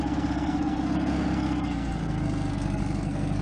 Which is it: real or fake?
fake